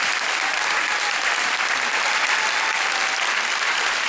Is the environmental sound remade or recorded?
recorded